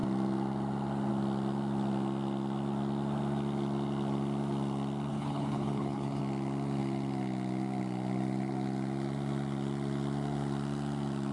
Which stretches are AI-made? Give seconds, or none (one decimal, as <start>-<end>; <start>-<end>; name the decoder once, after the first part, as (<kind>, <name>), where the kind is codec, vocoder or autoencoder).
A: 5.1-6.2 (codec, HILCodec)